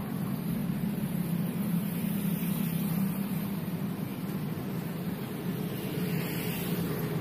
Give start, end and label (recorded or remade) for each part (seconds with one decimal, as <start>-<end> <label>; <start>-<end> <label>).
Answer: 0.0-7.2 recorded